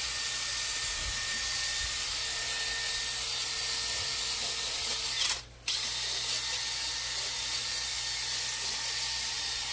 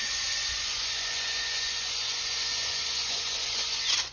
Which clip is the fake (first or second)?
second